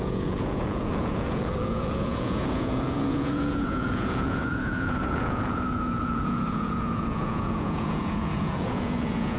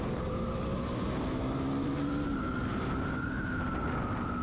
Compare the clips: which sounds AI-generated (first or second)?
first